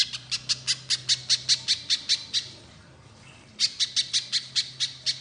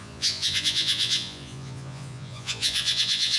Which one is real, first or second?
first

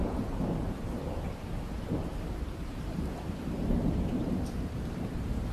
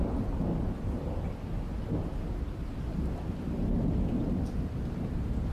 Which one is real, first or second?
second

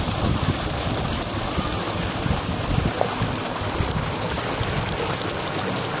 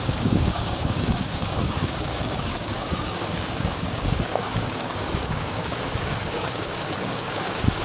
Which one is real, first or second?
first